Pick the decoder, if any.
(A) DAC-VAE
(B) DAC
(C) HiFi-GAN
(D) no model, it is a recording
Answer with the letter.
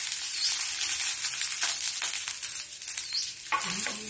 D